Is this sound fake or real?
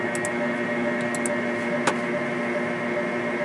real